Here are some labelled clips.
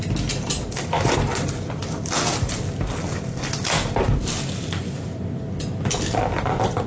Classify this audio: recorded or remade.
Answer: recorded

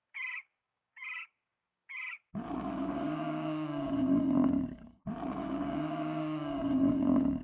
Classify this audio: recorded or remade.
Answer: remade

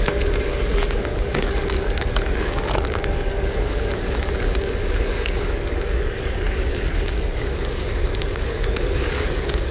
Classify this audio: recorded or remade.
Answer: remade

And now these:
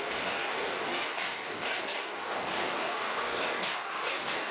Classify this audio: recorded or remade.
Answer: remade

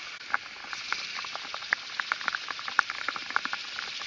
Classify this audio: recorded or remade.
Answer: recorded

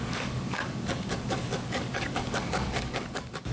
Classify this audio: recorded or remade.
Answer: remade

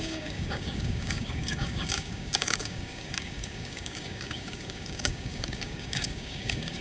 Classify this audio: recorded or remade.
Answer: remade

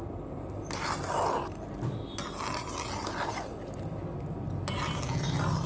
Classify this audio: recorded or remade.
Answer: recorded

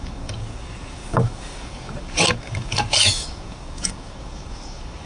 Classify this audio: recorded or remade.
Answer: remade